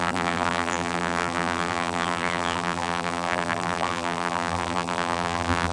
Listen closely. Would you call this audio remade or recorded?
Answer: remade